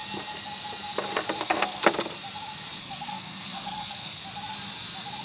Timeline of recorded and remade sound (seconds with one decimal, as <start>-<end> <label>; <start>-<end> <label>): 0.0-1.4 recorded; 1.4-1.8 remade; 1.8-2.8 recorded; 2.8-4.2 remade; 4.2-5.2 recorded